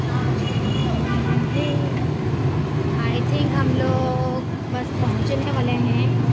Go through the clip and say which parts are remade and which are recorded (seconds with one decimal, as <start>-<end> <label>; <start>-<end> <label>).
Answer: 0.0-6.3 recorded